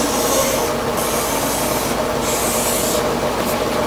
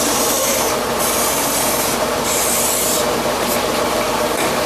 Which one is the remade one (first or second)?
second